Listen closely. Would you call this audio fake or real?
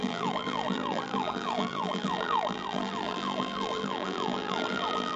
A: fake